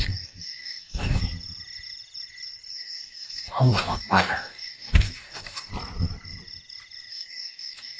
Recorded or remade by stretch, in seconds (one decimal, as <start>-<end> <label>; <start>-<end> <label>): 0.0-1.2 remade; 1.2-2.7 recorded; 2.7-5.7 remade; 5.7-7.1 recorded; 7.1-8.0 remade